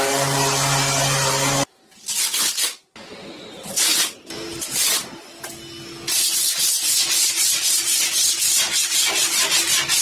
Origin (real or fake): real